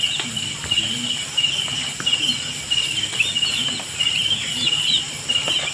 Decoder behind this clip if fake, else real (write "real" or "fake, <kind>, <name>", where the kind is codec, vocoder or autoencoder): real